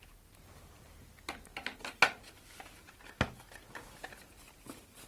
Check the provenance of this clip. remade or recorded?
recorded